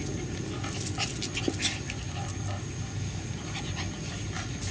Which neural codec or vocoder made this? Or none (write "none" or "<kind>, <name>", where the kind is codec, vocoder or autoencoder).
none